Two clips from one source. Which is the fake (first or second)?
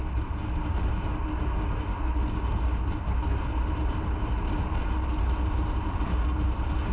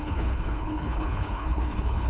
second